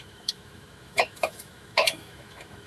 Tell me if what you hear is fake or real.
fake